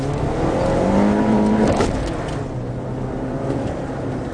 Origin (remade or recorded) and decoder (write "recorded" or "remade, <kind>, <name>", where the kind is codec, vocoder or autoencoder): recorded